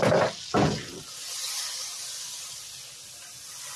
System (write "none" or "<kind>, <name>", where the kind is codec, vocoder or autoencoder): none